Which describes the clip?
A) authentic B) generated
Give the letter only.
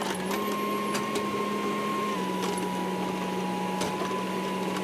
A